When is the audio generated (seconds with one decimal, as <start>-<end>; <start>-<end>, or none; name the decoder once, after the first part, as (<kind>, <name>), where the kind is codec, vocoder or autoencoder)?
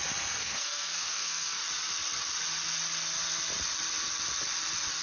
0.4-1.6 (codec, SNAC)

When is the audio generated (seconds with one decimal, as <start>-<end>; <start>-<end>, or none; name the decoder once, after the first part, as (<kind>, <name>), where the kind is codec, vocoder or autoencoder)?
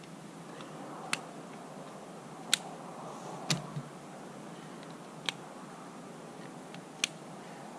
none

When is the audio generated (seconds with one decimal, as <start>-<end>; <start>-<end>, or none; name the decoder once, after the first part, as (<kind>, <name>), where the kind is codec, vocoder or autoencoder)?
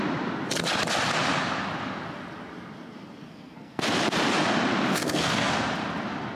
3.2-3.8 (codec, SNAC); 4.9-5.5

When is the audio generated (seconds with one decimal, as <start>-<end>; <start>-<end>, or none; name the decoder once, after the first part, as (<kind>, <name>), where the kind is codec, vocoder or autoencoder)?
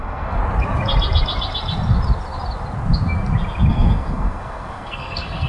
0.0-0.4 (codec, SNAC); 3.7-5.5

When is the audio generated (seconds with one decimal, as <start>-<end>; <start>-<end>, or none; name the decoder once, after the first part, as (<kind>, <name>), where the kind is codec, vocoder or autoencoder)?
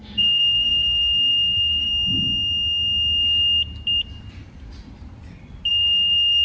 0.0-1.9 (codec, SNAC); 5.7-6.4